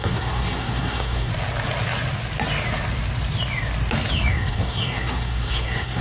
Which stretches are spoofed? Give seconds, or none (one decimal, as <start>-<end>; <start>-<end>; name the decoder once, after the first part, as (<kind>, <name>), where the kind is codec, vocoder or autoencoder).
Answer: 0.0-1.3 (codec, SNAC); 4.3-6.0